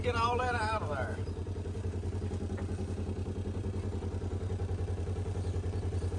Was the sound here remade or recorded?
remade